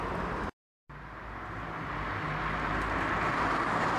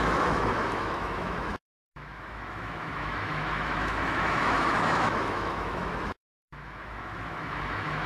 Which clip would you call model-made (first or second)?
second